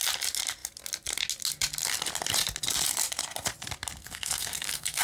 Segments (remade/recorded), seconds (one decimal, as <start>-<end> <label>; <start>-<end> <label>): 0.0-4.0 recorded; 4.0-5.0 remade